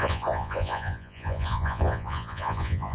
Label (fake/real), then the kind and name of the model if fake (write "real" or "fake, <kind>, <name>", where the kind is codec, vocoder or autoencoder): fake, vocoder, Vocos